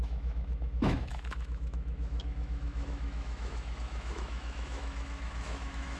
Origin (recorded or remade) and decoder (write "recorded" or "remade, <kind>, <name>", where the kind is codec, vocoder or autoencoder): remade, autoencoder, DAC-VAE